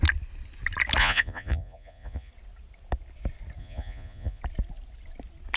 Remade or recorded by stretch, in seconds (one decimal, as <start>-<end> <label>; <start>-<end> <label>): 0.0-1.0 recorded; 1.0-2.3 remade; 2.3-3.6 recorded; 3.6-4.4 remade; 4.4-5.6 recorded